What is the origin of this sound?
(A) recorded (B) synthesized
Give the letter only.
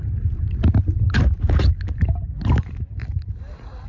A